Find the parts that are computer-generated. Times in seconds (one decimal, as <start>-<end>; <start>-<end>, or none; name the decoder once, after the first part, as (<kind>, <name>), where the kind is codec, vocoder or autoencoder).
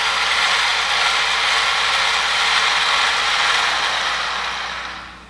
none